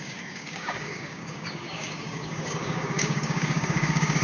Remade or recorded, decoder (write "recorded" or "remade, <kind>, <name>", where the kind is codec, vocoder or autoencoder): remade, codec, DAC